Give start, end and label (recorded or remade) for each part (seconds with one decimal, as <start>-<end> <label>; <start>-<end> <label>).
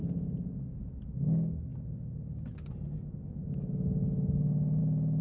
0.0-0.5 remade; 0.5-5.2 recorded